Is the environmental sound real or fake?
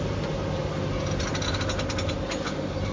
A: real